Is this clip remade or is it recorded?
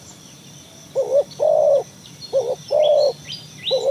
recorded